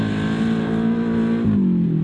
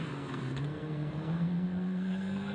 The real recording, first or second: first